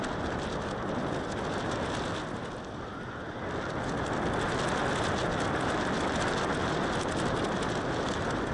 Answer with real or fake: real